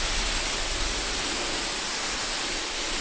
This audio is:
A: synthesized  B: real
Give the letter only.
B